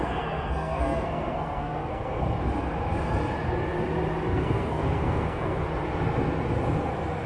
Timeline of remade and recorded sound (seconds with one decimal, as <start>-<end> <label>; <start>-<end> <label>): 0.0-2.2 remade; 2.2-4.3 recorded; 4.3-5.6 remade; 5.6-7.3 recorded